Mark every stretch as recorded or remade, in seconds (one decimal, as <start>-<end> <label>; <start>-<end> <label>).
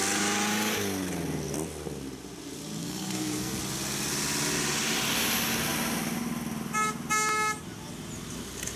0.0-2.8 recorded; 2.8-3.6 remade; 3.6-8.8 recorded